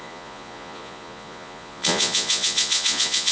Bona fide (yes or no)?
no